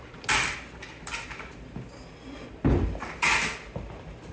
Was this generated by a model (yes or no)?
no